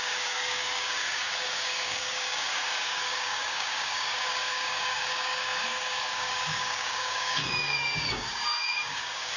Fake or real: fake